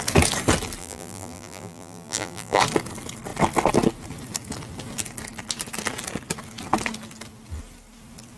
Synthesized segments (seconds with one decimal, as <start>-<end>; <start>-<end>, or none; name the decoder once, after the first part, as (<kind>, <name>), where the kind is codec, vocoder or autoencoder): 0.8-2.6 (vocoder, BigVGAN v2)